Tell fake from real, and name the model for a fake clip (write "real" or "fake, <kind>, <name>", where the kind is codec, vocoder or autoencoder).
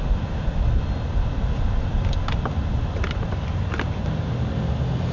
real